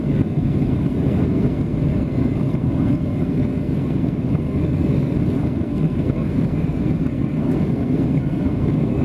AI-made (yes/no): yes